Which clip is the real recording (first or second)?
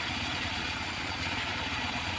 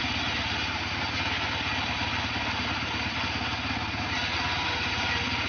second